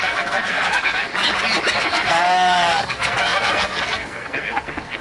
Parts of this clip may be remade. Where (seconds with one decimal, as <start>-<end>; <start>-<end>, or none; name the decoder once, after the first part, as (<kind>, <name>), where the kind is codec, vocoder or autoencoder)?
0.0-1.1 (codec, SNAC); 1.8-5.0